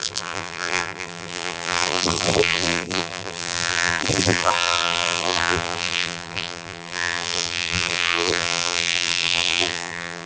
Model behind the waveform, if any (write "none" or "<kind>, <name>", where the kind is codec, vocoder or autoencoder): vocoder, BigVGAN v2